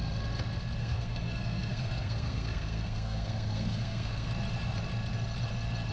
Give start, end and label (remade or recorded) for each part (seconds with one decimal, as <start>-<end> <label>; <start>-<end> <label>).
0.0-0.8 recorded; 0.8-4.3 remade; 4.3-5.9 recorded